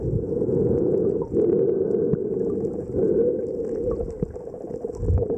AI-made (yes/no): no